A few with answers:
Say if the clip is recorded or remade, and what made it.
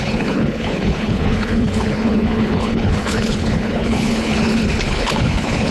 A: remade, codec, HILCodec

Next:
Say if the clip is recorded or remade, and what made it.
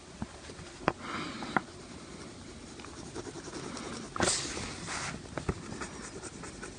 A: recorded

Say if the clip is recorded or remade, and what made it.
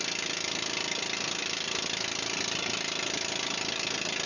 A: recorded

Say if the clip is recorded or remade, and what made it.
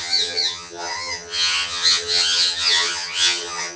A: remade, vocoder, HiFi-GAN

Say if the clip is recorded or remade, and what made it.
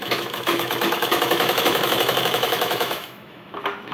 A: remade, autoencoder, DAC-VAE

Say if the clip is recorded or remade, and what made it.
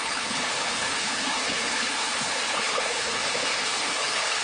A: remade, codec, HILCodec